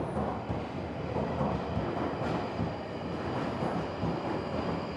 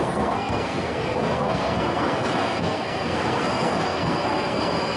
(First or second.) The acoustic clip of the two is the first